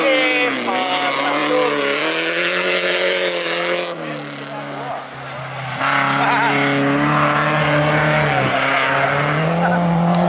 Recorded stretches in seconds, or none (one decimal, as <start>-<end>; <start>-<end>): 0.0-10.3